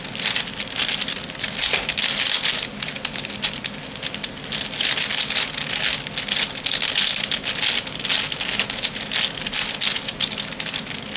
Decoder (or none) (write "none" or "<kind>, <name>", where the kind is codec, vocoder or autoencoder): none